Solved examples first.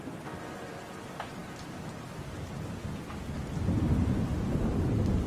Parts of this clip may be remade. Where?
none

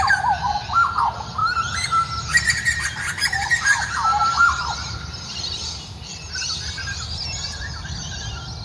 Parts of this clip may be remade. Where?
none